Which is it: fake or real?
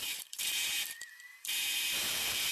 fake